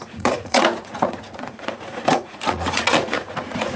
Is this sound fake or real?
fake